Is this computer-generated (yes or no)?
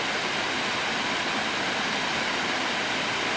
no